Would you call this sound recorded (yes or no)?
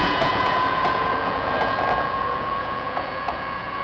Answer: no